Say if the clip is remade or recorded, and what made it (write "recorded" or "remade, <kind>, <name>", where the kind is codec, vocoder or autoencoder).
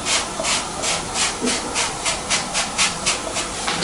recorded